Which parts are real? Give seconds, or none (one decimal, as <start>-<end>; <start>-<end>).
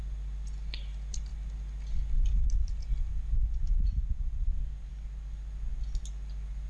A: 0.0-6.7